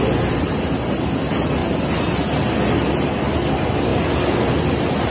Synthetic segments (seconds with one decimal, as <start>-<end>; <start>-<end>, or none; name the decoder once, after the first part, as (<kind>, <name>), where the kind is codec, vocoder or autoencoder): none